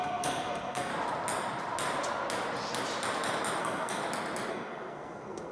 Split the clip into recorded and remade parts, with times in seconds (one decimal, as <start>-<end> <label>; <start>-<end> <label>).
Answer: 0.0-0.9 remade; 0.9-3.6 recorded; 3.6-4.0 remade; 4.0-4.5 recorded; 4.5-5.5 remade